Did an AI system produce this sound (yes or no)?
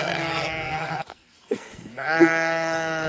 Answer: yes